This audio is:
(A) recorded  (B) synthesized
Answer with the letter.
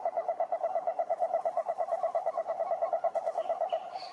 A